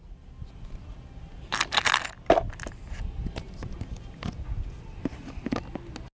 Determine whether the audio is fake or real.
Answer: real